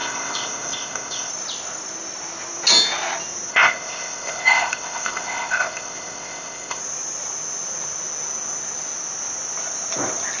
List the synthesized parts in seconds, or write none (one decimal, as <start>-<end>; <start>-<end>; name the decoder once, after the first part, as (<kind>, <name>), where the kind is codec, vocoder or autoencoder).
0.0-1.3 (codec, ZipCodec); 3.5-6.8